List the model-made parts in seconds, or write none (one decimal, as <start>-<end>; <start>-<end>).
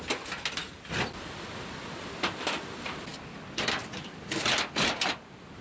none